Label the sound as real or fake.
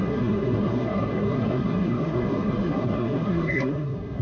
fake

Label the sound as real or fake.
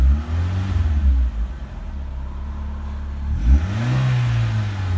real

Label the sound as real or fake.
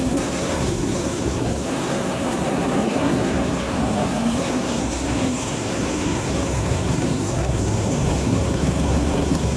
fake